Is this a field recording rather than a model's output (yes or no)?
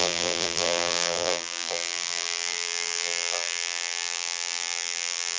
no